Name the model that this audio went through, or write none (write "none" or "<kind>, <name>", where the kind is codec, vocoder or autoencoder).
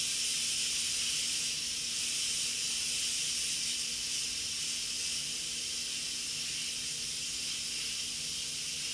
none